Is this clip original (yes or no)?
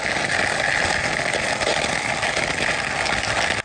yes